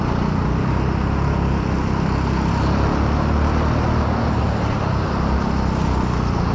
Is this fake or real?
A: real